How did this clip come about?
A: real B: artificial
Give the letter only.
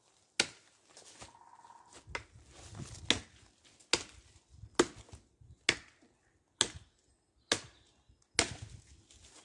A